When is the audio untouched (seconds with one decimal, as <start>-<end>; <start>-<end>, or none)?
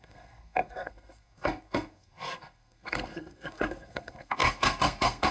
none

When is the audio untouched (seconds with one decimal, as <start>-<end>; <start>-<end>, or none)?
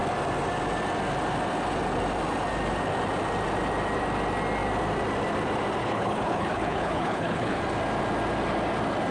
0.0-5.8; 7.6-9.1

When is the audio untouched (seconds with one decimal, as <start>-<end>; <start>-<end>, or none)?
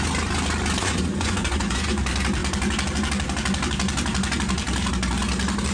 0.0-0.8; 2.0-5.7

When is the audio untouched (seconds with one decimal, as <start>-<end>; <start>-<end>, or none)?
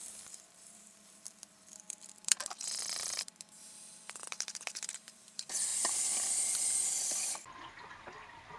5.7-6.4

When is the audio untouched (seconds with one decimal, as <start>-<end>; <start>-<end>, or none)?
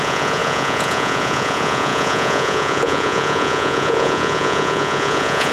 none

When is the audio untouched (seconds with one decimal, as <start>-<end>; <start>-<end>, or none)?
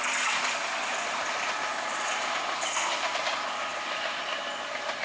0.0-5.0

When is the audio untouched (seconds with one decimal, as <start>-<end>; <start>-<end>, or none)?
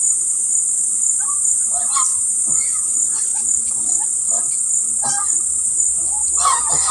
2.1-2.9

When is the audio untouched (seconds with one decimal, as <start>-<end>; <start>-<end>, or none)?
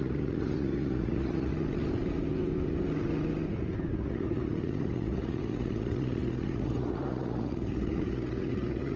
1.5-3.9